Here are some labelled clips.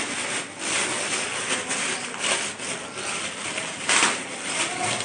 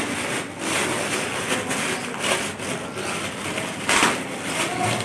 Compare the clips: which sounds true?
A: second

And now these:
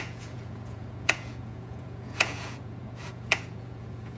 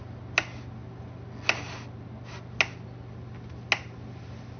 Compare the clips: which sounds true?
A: second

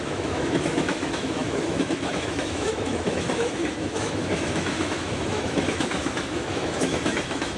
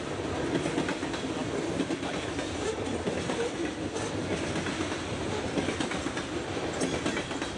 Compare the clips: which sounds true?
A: second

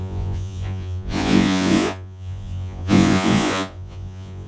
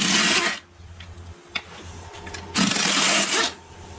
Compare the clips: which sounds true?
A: second